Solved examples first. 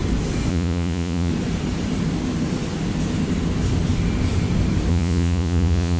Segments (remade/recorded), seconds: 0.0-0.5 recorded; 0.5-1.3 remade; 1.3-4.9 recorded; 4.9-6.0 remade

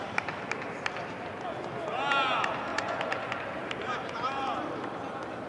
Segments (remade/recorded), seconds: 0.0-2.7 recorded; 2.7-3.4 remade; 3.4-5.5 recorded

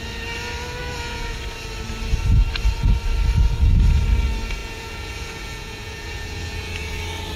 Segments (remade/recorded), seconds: 0.0-0.8 recorded; 0.8-1.4 remade; 1.4-4.6 recorded; 4.6-6.9 remade; 6.9-7.4 recorded

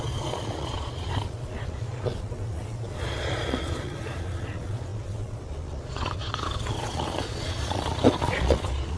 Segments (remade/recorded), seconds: 0.0-9.0 remade

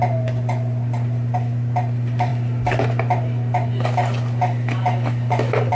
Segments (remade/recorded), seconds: 0.0-5.7 recorded

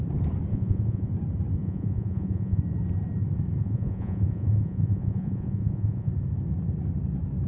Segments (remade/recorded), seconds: 0.0-0.5 recorded; 0.5-1.1 remade; 1.1-1.6 recorded; 1.6-2.6 remade; 2.6-3.6 recorded; 3.6-6.1 remade; 6.1-7.5 recorded

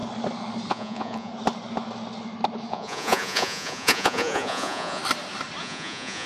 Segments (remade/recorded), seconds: 0.0-0.7 recorded; 0.7-1.3 remade; 1.3-2.7 recorded; 2.7-5.0 remade; 5.0-5.6 recorded; 5.6-6.3 remade